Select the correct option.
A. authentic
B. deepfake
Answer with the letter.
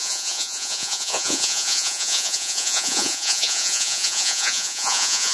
B